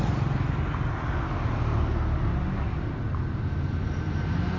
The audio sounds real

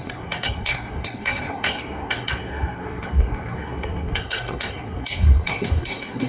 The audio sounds fake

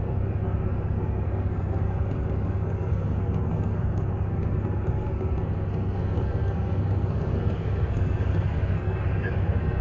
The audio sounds fake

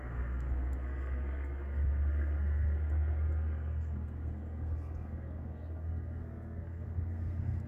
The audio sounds fake